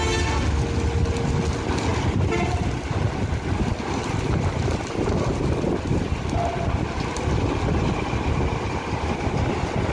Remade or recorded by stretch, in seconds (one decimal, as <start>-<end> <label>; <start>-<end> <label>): 0.0-9.9 recorded